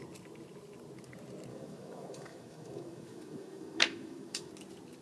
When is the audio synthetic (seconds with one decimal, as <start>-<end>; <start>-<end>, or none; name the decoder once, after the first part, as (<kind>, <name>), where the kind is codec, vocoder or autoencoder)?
1.5-4.5 (autoencoder, DAC-VAE)

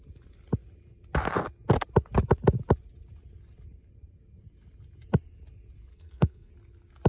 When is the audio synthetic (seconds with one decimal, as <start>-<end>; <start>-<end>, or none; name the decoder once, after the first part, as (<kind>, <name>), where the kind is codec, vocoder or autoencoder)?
5.9-6.5 (codec, SNAC)

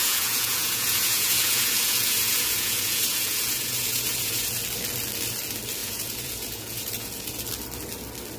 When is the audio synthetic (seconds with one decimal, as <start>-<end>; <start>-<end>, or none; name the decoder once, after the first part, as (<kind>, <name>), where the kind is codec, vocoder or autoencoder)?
0.0-4.5 (vocoder, Vocos); 5.8-7.3